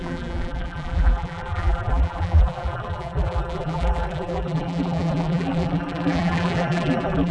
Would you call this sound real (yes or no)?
no